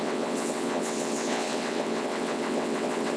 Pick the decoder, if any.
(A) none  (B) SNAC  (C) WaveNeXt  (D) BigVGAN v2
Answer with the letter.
C